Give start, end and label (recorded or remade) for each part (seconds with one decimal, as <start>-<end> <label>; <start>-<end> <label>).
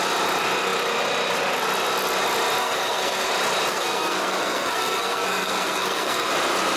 0.0-2.6 recorded; 2.6-3.3 remade; 3.3-3.7 recorded; 3.7-6.3 remade; 6.3-6.8 recorded